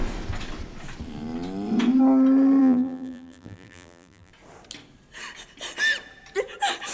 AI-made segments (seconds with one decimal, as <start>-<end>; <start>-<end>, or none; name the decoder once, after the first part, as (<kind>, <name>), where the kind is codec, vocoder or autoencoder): 2.6-4.3 (vocoder, BigVGAN v2)